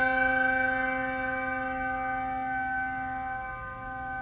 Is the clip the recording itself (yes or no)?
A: yes